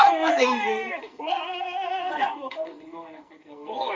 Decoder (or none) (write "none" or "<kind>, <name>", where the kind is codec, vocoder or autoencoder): codec, SNAC